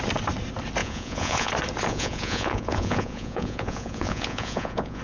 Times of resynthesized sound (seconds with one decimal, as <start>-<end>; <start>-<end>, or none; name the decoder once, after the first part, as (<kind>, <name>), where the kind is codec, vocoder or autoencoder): 0.8-1.5 (vocoder, Vocos); 1.9-5.0